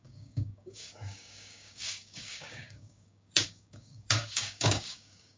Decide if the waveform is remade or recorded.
remade